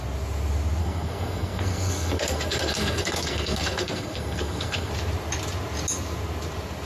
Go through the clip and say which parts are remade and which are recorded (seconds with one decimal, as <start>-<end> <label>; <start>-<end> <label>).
0.0-0.8 recorded; 0.8-4.9 remade; 4.9-6.9 recorded